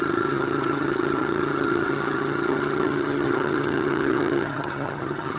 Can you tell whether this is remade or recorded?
remade